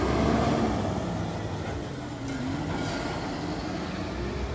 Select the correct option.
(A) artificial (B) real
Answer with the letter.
B